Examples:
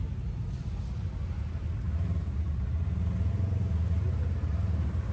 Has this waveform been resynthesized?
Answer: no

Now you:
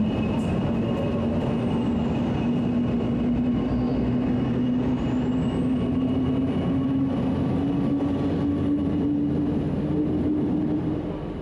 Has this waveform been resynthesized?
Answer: no